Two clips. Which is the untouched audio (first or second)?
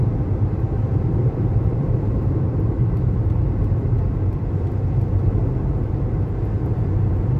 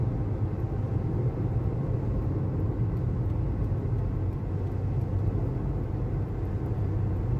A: second